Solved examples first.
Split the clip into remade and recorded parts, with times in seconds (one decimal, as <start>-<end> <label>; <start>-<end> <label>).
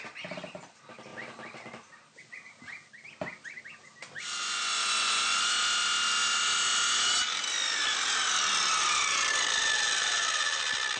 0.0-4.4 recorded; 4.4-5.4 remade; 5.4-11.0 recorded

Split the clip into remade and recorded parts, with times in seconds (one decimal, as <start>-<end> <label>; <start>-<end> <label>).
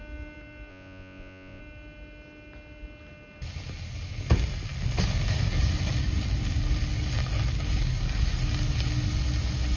0.0-0.7 recorded; 0.7-1.6 remade; 1.6-9.8 recorded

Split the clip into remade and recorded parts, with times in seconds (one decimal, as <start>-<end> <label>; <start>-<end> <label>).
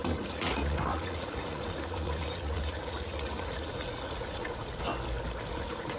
0.0-4.9 remade; 4.9-5.5 recorded; 5.5-6.0 remade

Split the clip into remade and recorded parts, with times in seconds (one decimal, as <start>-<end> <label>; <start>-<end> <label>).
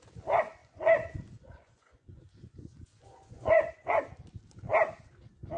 0.0-0.6 recorded; 0.6-4.0 remade; 4.0-5.6 recorded